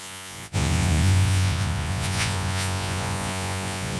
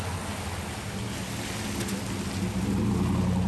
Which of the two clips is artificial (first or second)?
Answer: first